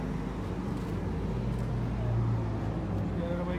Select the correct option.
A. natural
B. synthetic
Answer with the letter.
A